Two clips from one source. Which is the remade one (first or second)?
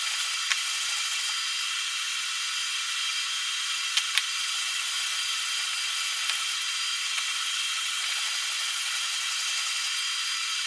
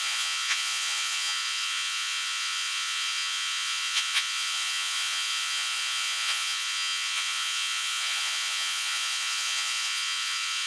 second